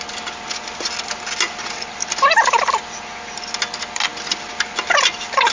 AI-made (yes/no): no